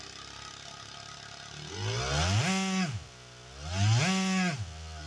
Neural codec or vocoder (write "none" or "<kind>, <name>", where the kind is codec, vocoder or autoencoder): none